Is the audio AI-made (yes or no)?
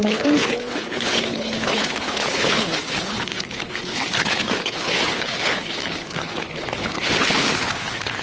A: yes